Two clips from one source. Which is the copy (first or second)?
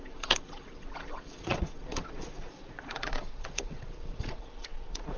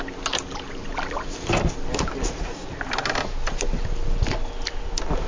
first